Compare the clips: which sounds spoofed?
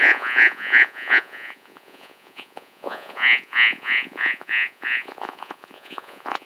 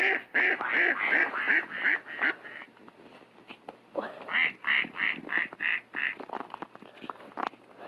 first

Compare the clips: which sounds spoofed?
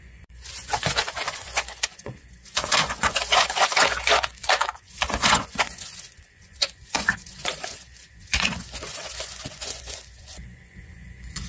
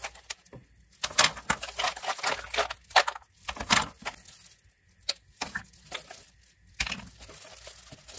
first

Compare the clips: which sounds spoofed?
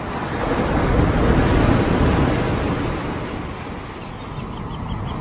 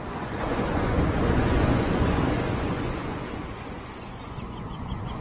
second